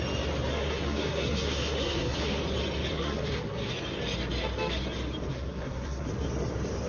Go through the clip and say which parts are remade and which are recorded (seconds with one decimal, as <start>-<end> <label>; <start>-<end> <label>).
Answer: 0.0-0.5 recorded; 0.5-2.4 remade; 2.4-2.9 recorded; 2.9-3.7 remade; 3.7-5.3 recorded; 5.3-6.1 remade; 6.1-6.9 recorded